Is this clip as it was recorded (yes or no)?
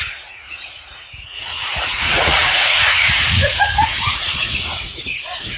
no